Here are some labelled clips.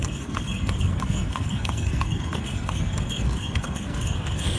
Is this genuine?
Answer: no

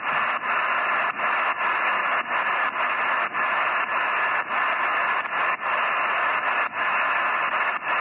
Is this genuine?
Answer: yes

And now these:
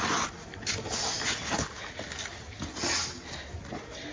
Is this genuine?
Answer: yes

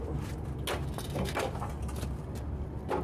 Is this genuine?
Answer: yes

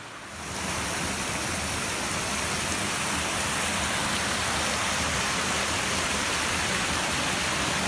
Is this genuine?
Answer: yes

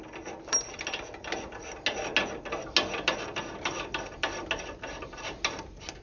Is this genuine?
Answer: yes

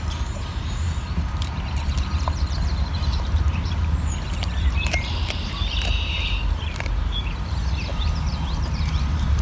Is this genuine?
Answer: no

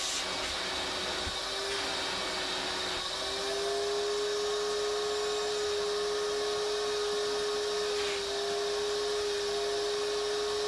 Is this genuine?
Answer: yes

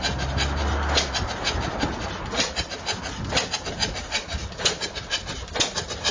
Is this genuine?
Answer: yes